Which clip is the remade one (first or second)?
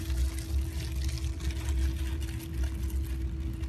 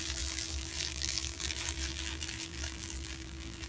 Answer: second